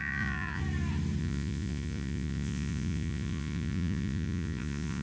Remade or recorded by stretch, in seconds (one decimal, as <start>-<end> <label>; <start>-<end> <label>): 0.0-0.6 remade; 0.6-1.2 recorded; 1.2-5.0 remade